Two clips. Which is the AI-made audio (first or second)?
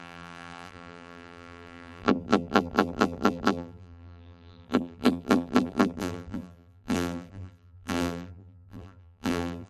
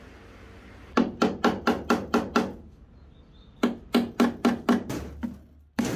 first